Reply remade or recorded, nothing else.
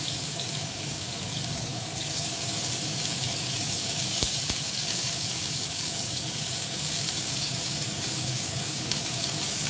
remade